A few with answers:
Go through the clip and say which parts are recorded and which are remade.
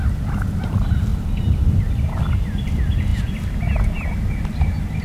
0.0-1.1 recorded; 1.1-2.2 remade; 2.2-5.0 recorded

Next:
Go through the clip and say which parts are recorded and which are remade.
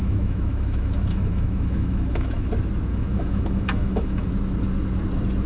0.0-2.5 remade; 2.5-2.9 recorded; 2.9-4.3 remade; 4.3-5.5 recorded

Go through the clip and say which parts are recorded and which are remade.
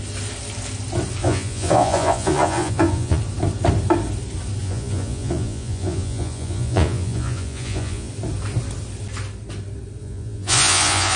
0.0-1.2 recorded; 1.2-3.2 remade; 3.2-4.6 recorded; 4.6-8.1 remade; 8.1-10.0 recorded; 10.0-11.2 remade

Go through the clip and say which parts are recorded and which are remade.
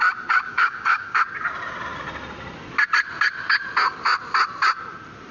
0.0-0.5 recorded; 0.5-1.2 remade; 1.2-5.3 recorded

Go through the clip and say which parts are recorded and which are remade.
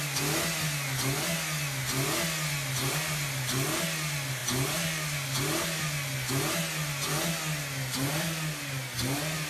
0.0-9.5 recorded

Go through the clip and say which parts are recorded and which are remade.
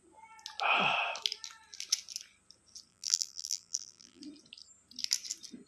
0.0-2.9 recorded; 2.9-4.2 remade; 4.2-5.7 recorded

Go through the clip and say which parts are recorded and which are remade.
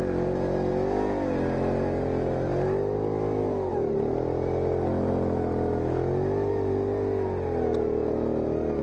0.0-8.8 recorded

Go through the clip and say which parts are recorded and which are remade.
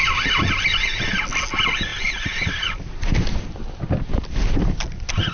0.0-5.3 recorded